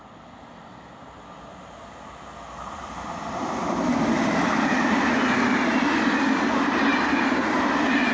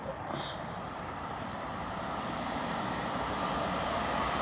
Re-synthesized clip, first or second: second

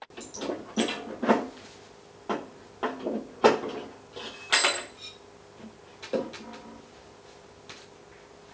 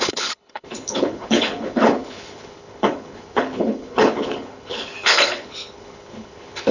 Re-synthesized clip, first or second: second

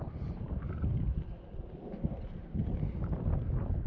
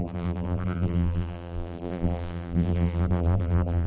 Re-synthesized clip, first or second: second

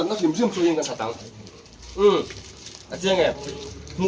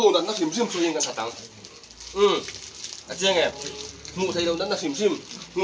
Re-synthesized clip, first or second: first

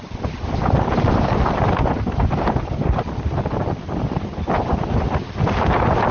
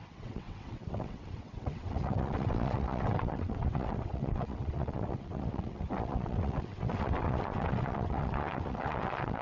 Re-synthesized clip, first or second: second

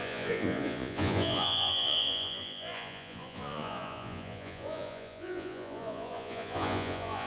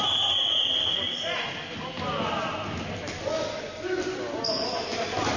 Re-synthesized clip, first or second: first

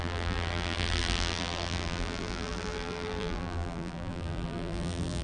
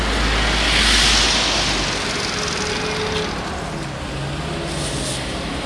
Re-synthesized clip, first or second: first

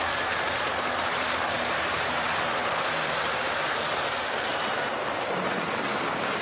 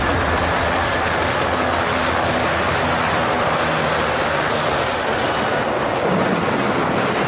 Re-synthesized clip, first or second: first